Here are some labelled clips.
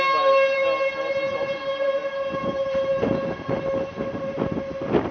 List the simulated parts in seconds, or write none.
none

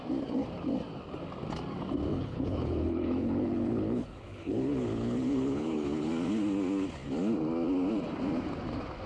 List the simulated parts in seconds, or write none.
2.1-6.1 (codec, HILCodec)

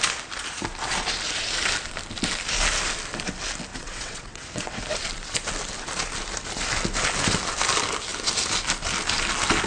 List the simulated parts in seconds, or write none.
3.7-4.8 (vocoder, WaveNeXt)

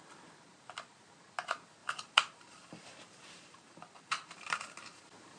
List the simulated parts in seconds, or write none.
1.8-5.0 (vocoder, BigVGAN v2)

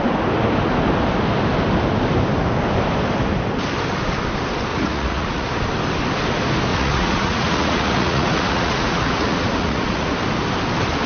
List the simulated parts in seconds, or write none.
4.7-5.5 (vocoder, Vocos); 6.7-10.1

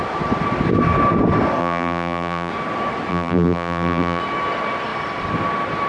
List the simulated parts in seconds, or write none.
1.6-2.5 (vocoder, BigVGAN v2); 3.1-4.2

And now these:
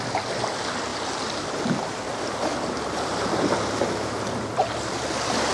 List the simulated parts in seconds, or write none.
none

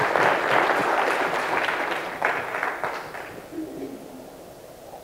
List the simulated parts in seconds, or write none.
0.8-2.1 (vocoder, BigVGAN v2)